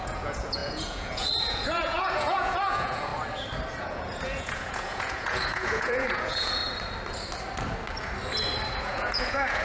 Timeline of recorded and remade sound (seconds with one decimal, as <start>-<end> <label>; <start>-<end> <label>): 0.0-3.1 remade; 3.1-3.8 recorded; 3.8-6.6 remade; 6.6-8.8 recorded; 8.8-9.6 remade